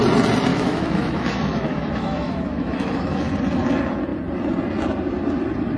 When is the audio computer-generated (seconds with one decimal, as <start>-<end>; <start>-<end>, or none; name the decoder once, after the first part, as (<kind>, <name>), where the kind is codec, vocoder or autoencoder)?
0.5-3.3 (autoencoder, DAC-VAE)